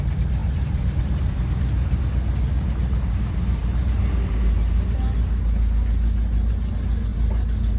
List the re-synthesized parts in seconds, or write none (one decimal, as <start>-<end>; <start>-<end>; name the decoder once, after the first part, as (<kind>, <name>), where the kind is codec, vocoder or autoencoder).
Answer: 0.4-1.0 (vocoder, BigVGAN v2)